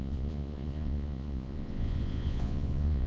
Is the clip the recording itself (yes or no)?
no